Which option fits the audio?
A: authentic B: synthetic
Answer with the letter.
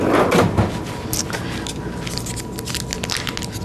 A